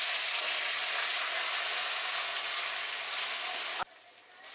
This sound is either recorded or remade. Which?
recorded